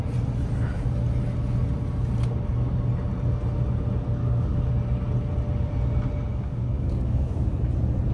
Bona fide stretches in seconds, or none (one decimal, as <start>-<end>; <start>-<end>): 0.0-4.2; 4.7-6.3; 7.6-8.1

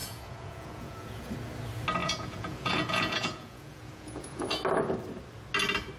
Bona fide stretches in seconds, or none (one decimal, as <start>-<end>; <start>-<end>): 1.3-2.0; 4.4-6.0

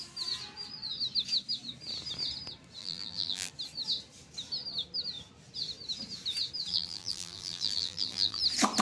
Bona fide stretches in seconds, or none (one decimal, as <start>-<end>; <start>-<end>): 0.0-2.8; 3.5-6.7; 8.4-8.8